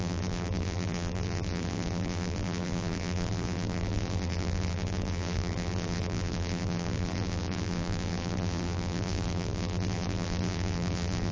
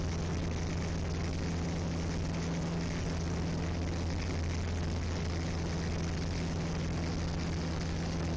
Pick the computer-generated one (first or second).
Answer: first